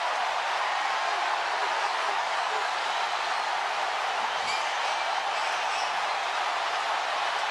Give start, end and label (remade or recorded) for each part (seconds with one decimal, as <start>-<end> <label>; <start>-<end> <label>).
0.0-1.6 recorded; 1.6-2.9 remade; 2.9-7.5 recorded